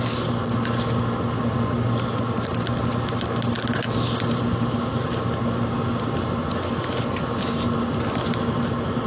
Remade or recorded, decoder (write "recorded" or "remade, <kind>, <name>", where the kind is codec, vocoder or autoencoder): recorded